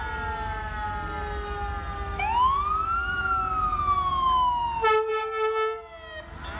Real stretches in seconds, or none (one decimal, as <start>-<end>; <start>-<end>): 0.0-6.6